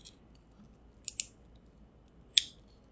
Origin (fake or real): real